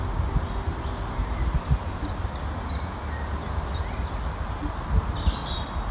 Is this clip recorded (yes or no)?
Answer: yes